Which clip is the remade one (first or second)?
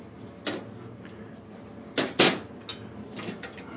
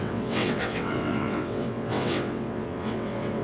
second